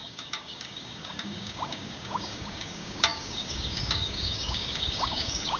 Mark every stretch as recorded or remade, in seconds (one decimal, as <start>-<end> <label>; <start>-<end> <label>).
0.0-5.6 remade